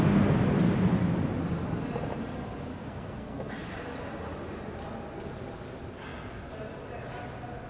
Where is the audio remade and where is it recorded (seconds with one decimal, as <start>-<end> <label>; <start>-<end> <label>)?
0.0-2.7 recorded; 2.7-3.5 remade; 3.5-7.7 recorded